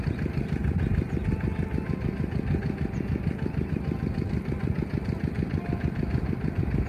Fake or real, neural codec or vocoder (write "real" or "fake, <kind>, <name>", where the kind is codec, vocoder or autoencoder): real